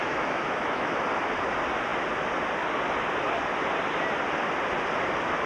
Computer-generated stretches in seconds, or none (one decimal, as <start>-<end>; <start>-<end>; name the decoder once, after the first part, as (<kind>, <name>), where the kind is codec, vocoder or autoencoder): 0.0-1.0 (autoencoder, DAC-VAE)